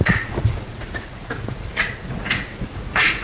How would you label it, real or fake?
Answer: fake